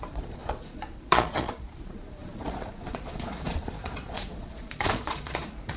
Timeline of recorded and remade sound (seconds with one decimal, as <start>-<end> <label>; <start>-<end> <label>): 0.0-5.8 remade